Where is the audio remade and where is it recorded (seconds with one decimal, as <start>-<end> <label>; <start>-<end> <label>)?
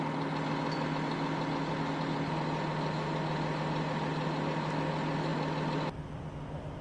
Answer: 0.0-6.8 recorded